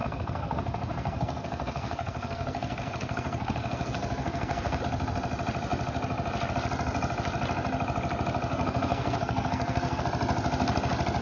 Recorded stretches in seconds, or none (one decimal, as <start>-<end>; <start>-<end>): 4.8-8.5; 10.0-11.2